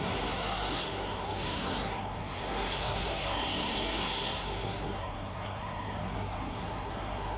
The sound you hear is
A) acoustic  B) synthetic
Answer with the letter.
B